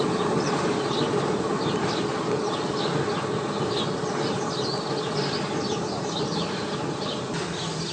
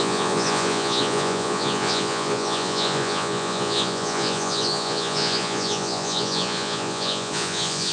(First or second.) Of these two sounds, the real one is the first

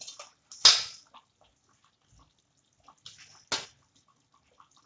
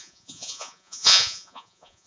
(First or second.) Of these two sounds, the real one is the first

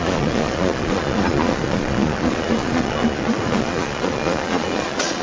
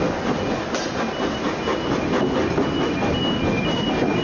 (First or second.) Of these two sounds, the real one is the second